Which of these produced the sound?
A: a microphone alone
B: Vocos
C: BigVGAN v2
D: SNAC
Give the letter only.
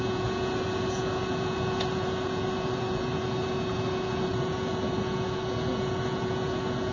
B